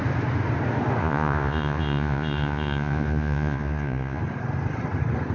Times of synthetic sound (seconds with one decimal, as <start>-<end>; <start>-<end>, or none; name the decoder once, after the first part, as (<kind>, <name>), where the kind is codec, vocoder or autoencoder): 1.0-4.2 (vocoder, Vocos)